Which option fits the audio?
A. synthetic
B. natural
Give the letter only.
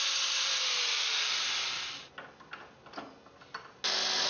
B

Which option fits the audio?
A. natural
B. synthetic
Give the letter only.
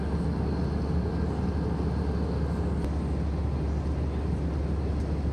A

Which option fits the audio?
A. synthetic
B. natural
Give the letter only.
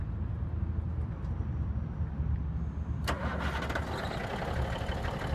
B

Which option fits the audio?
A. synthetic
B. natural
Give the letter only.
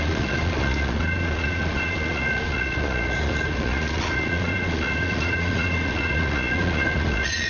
A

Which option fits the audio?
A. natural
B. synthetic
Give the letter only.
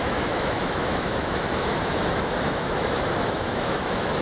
B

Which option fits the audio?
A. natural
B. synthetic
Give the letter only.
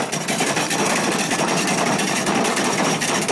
B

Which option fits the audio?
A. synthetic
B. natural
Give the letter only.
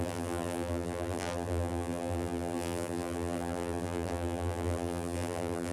A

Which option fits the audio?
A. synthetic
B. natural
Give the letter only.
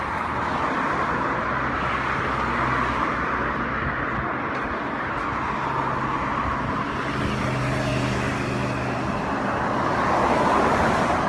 B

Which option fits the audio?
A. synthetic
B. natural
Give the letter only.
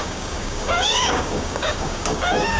A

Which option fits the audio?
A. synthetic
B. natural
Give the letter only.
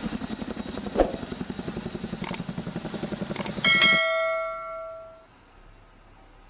B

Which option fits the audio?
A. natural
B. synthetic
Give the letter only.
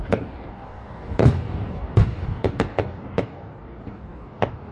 B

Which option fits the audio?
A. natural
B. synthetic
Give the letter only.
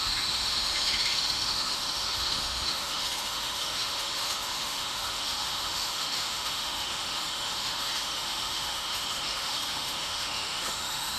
B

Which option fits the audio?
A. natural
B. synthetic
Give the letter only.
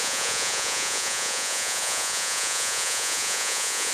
B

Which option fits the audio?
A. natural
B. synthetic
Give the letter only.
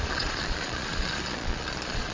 B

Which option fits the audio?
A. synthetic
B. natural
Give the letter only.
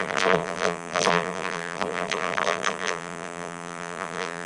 A